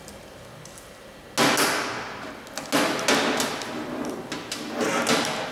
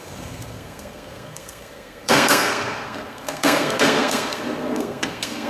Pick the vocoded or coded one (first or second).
second